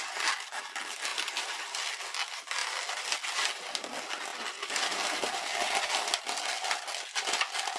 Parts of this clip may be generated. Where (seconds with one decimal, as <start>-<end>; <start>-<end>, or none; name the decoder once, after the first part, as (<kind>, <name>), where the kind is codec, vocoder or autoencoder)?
1.1-2.0 (vocoder, BigVGAN v2); 4.3-6.2